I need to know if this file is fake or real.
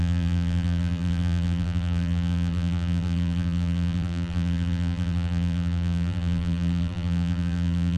fake